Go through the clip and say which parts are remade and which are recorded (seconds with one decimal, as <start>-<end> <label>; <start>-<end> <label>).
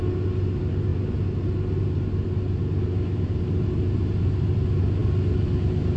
0.0-6.0 recorded